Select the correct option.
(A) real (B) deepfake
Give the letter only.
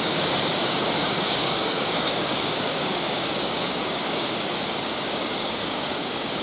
B